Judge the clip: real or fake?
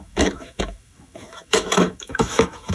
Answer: fake